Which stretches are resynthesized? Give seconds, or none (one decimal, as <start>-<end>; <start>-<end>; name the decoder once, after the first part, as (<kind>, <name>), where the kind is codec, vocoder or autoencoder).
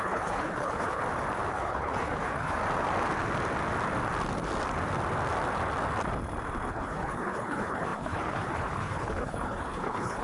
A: 0.0-1.0 (codec, HILCodec); 1.5-2.6; 6.7-10.2